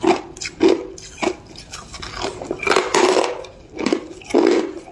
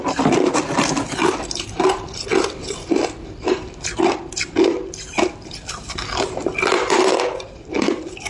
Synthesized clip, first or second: second